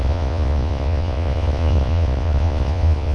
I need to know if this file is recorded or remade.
remade